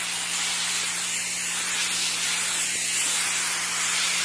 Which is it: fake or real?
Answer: real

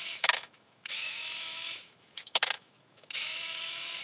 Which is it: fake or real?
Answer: fake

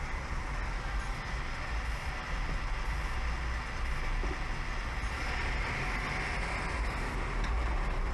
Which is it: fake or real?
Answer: real